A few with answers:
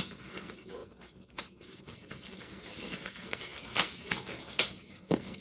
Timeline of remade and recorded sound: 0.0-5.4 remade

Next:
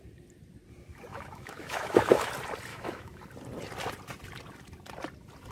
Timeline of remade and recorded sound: 0.0-1.1 recorded; 1.1-2.3 remade; 2.3-2.7 recorded; 2.7-3.2 remade; 3.2-5.5 recorded

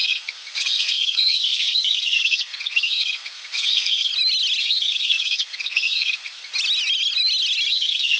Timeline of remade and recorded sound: 0.0-4.1 remade; 4.1-4.6 recorded; 4.6-6.5 remade; 6.5-7.7 recorded; 7.7-8.2 remade

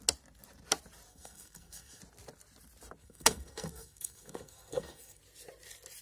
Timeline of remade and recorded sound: 0.0-1.1 recorded; 1.1-2.0 remade; 2.0-3.0 recorded; 3.0-5.2 remade; 5.2-6.0 recorded

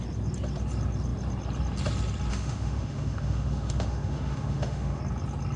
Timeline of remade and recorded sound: 0.0-2.3 recorded; 2.3-5.0 remade; 5.0-5.6 recorded

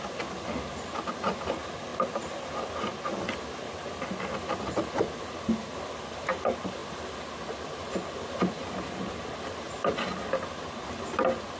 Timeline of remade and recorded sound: 0.0-11.6 recorded